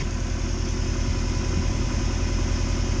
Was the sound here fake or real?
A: real